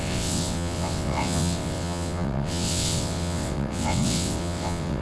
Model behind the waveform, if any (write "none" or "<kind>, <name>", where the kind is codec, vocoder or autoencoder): vocoder, WaveNeXt